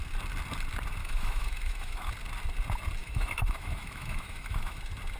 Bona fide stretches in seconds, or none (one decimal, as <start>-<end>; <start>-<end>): 0.0-1.0; 2.1-3.0; 4.8-5.2